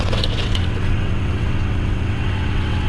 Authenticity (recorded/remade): remade